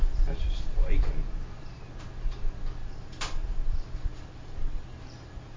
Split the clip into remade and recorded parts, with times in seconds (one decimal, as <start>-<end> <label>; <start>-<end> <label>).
0.0-1.1 remade; 1.1-2.8 recorded; 2.8-5.6 remade